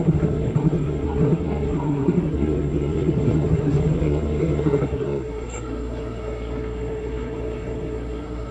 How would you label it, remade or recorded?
remade